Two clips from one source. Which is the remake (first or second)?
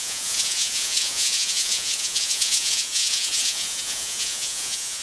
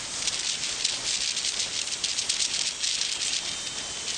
first